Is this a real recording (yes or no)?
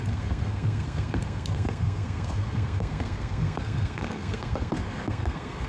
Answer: no